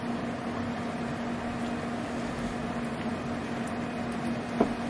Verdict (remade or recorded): recorded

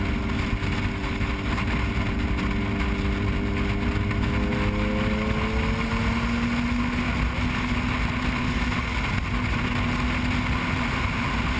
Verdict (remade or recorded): recorded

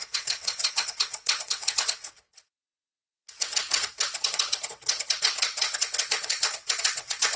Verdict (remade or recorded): remade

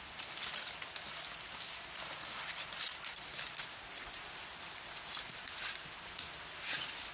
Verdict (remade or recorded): recorded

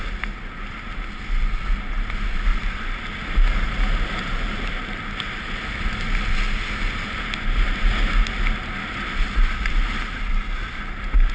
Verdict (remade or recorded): recorded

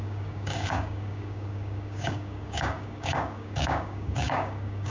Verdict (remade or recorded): remade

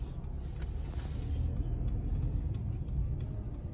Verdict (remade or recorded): recorded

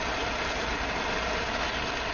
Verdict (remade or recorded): recorded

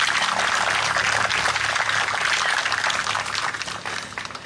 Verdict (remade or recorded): recorded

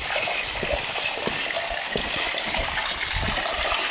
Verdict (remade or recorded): recorded